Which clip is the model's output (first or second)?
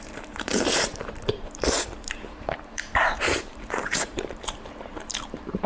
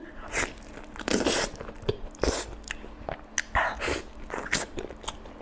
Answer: first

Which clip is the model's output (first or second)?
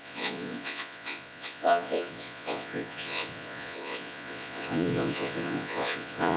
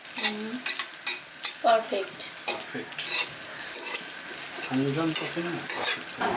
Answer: first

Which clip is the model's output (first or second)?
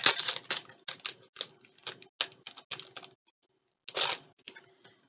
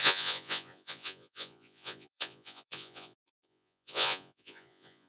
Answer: second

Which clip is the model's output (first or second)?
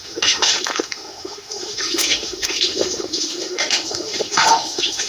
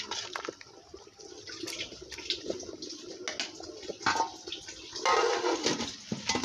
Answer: first